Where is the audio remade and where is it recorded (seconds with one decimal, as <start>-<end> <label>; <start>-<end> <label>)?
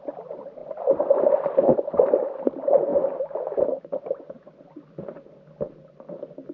0.0-6.5 recorded